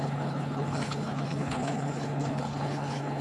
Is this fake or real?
fake